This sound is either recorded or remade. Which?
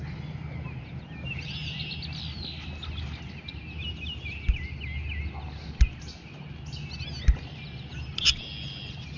recorded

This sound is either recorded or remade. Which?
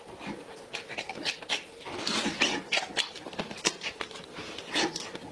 recorded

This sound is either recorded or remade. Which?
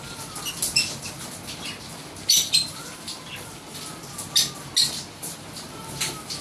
recorded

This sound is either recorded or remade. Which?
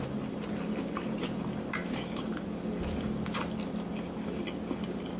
recorded